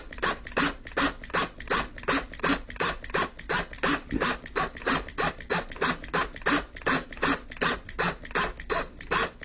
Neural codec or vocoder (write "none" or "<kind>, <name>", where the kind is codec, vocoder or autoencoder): none